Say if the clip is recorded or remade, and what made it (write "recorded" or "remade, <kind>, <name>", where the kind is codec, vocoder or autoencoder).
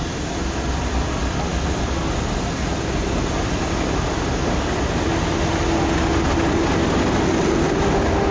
recorded